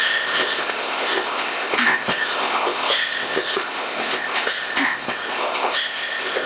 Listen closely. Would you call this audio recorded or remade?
remade